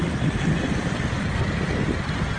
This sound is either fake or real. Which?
real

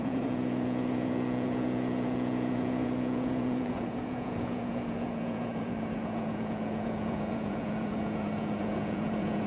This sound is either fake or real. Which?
fake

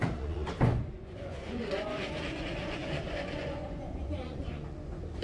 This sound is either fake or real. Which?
fake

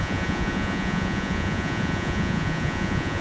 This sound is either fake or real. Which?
fake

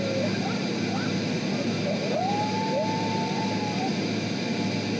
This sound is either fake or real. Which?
real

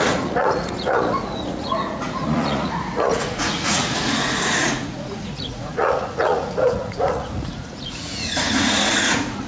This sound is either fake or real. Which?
fake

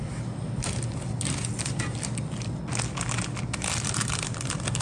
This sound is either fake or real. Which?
real